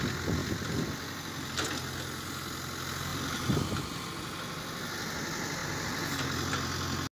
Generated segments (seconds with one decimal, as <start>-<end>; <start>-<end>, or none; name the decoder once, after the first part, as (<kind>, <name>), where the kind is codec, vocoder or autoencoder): 0.4-1.5 (vocoder, BigVGAN v2); 3.1-3.6